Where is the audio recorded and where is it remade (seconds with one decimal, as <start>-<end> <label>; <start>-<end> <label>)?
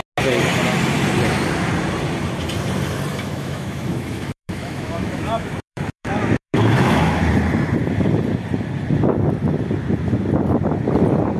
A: 0.0-3.1 recorded; 3.1-7.2 remade; 7.2-11.4 recorded